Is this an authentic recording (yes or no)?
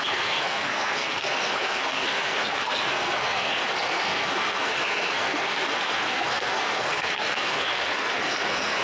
no